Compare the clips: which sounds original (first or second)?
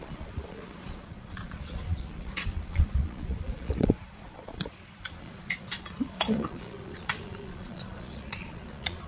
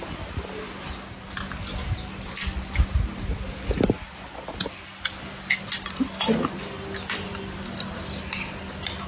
second